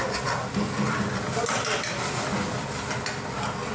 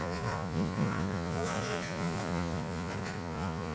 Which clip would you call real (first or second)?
first